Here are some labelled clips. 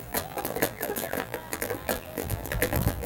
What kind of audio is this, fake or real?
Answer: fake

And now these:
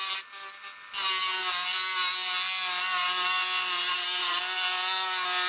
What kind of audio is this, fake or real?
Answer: real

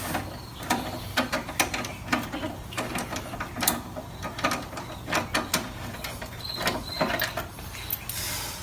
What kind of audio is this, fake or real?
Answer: real